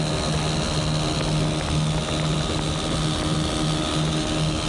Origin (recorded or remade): recorded